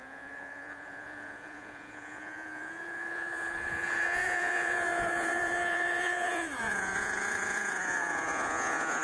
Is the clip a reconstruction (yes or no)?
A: yes